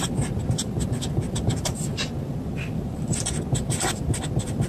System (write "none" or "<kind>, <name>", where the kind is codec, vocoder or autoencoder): vocoder, BigVGAN v2